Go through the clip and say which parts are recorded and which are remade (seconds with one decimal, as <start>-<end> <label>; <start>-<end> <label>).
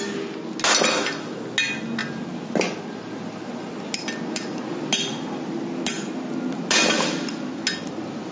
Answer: 0.0-8.3 recorded